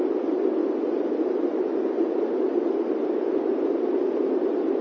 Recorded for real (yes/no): yes